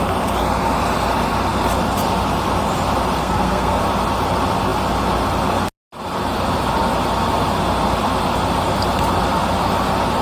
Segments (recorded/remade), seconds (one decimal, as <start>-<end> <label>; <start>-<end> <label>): 0.0-3.2 recorded; 3.2-3.8 remade; 3.8-10.2 recorded